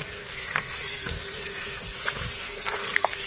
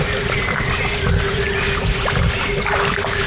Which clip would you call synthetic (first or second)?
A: first